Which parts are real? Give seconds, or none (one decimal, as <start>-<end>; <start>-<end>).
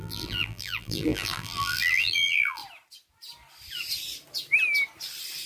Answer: 2.6-5.5